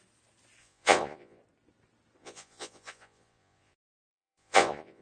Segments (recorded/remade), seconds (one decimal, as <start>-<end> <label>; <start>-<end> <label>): 0.0-0.6 recorded; 0.6-1.4 remade; 1.4-2.2 recorded; 2.2-5.0 remade